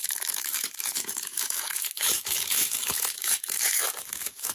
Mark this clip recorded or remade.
remade